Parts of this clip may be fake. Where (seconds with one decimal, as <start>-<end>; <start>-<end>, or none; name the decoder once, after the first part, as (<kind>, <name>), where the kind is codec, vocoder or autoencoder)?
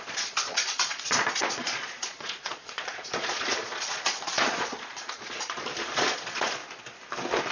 0.0-6.6 (vocoder, Vocos)